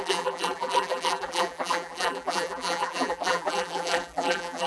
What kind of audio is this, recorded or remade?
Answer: remade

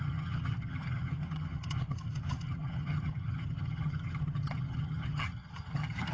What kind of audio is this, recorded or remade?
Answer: remade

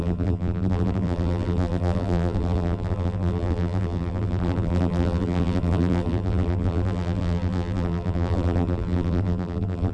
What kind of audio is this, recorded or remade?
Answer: remade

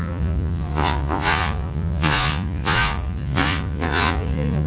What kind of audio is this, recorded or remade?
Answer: remade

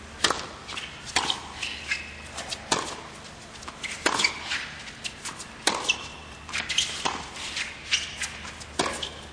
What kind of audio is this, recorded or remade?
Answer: recorded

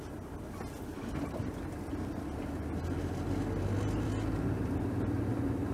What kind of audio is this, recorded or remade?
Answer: recorded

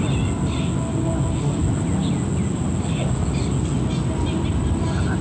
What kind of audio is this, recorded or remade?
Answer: recorded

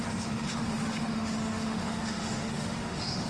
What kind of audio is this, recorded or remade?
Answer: remade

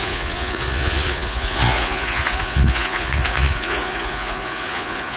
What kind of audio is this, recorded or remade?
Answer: remade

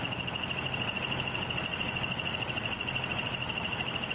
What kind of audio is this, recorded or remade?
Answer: recorded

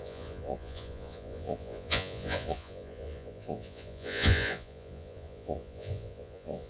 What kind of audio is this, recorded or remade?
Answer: remade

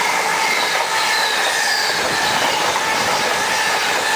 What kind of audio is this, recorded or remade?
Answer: recorded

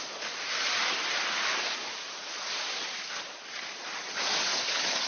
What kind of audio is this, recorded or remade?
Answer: recorded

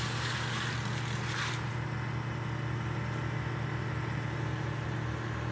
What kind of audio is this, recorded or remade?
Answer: recorded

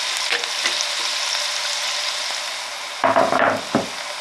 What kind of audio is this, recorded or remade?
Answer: recorded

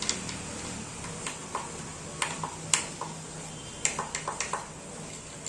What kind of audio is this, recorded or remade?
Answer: recorded